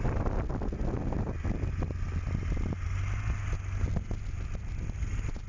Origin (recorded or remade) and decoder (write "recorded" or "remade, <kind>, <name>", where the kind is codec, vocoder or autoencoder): recorded